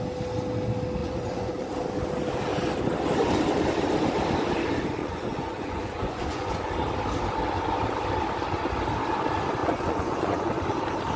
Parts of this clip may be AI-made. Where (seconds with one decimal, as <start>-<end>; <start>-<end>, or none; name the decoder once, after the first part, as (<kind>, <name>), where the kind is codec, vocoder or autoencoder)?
1.0-1.7 (vocoder, Vocos); 5.0-6.7; 9.6-10.5

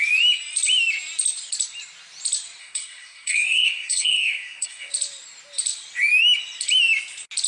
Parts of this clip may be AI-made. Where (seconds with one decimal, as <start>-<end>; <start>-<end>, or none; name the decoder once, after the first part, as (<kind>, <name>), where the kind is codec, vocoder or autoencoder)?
2.6-4.9 (codec, SNAC)

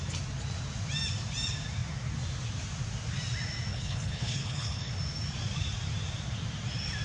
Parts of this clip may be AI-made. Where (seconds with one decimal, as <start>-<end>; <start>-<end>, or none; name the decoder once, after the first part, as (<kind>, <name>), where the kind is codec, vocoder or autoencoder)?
3.7-4.9 (codec, HILCodec)

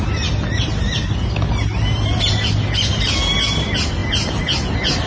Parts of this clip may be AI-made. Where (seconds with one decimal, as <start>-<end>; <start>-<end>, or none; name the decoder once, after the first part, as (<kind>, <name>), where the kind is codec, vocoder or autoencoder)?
none

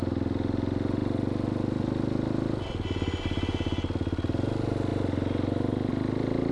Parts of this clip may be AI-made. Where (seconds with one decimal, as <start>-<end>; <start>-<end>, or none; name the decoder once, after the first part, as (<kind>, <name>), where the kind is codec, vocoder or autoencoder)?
none

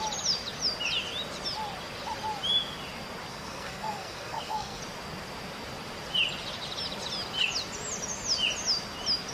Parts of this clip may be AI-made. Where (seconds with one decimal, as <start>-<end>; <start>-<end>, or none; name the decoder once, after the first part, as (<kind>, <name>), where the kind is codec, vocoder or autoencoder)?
3.3-4.8 (codec, SNAC)

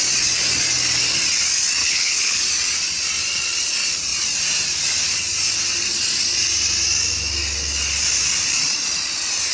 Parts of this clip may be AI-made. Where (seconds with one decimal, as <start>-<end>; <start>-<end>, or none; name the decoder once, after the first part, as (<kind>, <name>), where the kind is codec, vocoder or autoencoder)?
1.8-2.4 (codec, HILCodec)